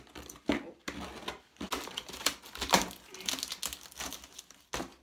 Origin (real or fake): real